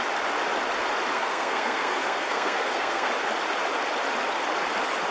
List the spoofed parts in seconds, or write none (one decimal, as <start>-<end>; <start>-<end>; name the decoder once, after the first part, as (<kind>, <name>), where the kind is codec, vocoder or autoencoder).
1.1-3.1 (codec, SNAC)